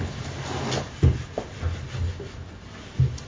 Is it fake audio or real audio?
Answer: real